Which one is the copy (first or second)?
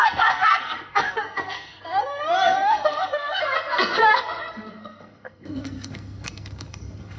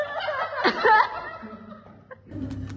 first